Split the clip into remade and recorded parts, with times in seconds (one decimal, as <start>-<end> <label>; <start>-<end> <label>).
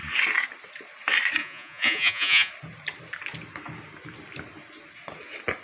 0.0-1.4 recorded; 1.4-2.5 remade; 2.5-5.6 recorded